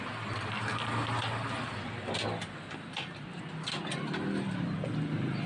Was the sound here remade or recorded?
recorded